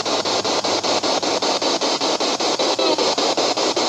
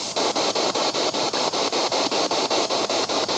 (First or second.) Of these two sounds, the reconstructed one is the second